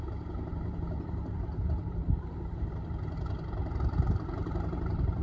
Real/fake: fake